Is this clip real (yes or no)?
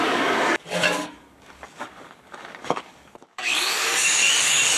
no